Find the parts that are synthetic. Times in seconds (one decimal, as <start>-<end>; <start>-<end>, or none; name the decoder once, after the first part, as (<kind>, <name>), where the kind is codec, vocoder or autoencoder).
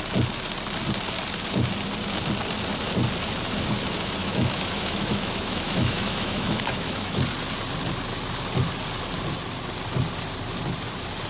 4.2-7.2 (autoencoder, DAC-VAE)